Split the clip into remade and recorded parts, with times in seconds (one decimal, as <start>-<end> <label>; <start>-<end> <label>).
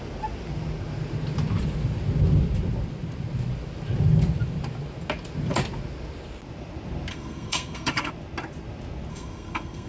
0.0-7.1 recorded; 7.1-8.1 remade; 8.1-9.1 recorded; 9.1-9.9 remade